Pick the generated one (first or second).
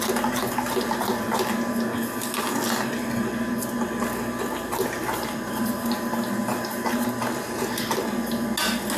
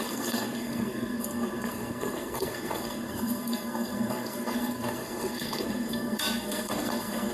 second